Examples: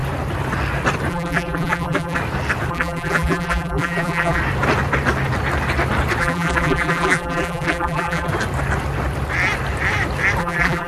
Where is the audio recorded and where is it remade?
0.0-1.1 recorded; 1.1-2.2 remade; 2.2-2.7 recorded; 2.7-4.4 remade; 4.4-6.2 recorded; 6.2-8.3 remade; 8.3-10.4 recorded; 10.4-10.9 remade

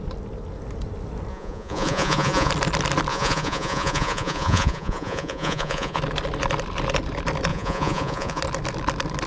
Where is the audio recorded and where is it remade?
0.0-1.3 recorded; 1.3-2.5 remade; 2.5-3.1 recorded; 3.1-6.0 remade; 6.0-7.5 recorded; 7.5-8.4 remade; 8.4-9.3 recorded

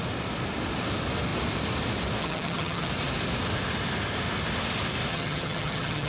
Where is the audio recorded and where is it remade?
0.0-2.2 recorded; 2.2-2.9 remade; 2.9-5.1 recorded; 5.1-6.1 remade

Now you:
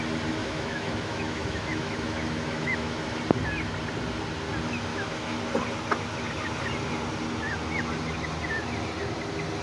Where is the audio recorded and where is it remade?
0.0-0.4 recorded; 0.4-3.0 remade; 3.0-4.9 recorded; 4.9-5.4 remade; 5.4-9.6 recorded